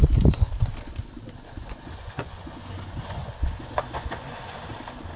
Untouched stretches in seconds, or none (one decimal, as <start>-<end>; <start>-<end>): 0.0-1.6; 4.7-5.2